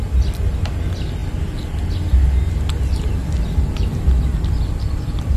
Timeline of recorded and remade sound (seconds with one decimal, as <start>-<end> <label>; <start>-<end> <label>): 0.0-5.4 recorded